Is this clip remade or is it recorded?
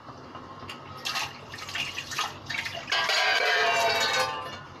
recorded